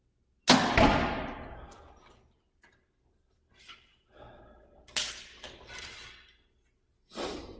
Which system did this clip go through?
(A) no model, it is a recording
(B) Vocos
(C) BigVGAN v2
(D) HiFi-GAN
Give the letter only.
A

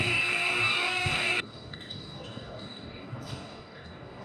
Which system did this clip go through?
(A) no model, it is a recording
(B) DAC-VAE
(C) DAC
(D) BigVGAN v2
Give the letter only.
C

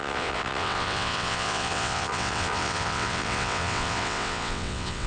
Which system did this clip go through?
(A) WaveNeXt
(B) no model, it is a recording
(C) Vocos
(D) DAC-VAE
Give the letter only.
A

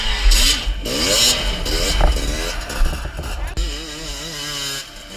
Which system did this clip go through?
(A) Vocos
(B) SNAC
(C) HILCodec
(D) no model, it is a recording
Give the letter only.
D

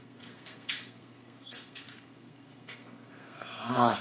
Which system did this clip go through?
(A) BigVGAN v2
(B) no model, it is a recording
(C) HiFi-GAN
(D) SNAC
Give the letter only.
D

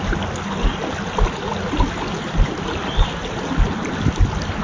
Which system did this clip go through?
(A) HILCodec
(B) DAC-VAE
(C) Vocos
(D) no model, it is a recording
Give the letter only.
D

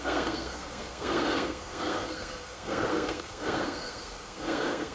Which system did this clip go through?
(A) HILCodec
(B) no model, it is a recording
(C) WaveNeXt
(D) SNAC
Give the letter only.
D